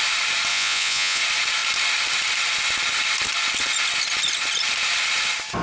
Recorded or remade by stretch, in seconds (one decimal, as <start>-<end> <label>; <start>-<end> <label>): 0.0-0.5 recorded; 0.5-1.2 remade; 1.2-5.6 recorded